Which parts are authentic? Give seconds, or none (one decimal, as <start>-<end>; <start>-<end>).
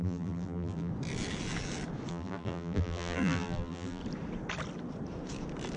0.9-2.1; 4.0-5.8